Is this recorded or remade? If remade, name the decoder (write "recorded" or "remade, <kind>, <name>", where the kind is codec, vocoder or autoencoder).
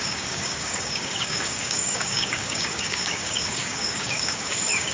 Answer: remade, codec, DAC